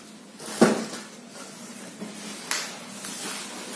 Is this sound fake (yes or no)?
no